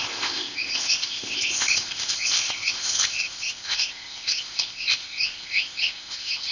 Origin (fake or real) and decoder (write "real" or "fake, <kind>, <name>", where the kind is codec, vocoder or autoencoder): fake, codec, ZipCodec